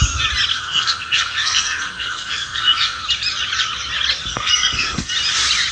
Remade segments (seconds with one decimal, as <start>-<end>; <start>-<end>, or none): 0.5-3.0; 4.3-5.1